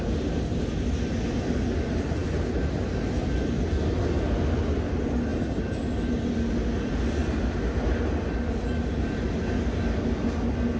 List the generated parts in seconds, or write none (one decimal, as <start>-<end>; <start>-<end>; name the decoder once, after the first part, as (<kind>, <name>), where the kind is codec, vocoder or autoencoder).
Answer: none